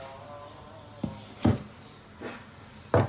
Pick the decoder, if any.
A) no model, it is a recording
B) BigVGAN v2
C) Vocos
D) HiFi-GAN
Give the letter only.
A